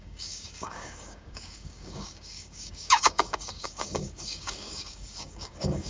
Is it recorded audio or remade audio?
remade